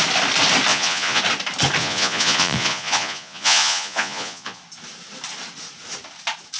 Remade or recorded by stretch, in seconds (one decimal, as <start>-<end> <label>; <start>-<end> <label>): 0.0-0.7 recorded; 0.7-1.2 remade; 1.2-1.8 recorded; 1.8-4.6 remade; 4.6-6.6 recorded

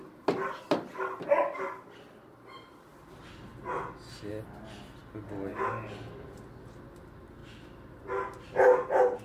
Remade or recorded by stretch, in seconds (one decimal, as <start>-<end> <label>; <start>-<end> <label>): 0.0-9.2 recorded

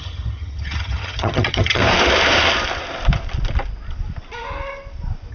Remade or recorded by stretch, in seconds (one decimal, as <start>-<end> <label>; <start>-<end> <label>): 0.0-1.8 remade; 1.8-5.3 recorded

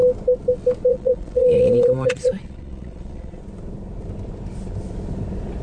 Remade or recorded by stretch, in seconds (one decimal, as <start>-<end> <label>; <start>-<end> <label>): 0.0-0.9 recorded; 0.9-3.4 remade; 3.4-5.6 recorded